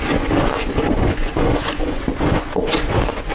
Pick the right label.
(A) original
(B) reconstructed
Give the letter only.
B